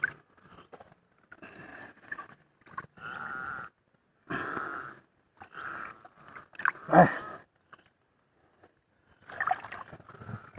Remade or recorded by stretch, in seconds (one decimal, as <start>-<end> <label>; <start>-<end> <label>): 0.0-1.7 recorded; 1.7-2.3 remade; 2.3-10.6 recorded